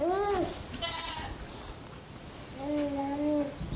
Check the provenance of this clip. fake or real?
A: real